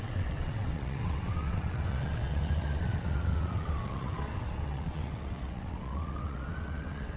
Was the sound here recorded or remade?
remade